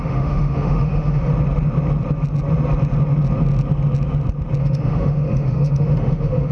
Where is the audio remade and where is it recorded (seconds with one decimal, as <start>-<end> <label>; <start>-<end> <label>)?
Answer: 0.0-1.3 remade; 1.3-4.6 recorded; 4.6-6.5 remade